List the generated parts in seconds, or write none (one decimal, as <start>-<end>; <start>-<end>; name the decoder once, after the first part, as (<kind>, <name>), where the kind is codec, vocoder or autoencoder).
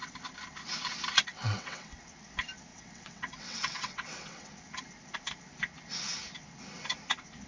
1.3-2.0 (vocoder, WaveNeXt); 2.7-4.5